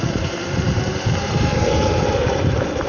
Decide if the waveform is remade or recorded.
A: remade